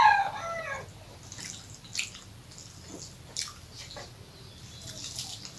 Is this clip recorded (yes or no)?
yes